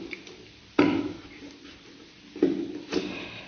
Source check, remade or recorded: remade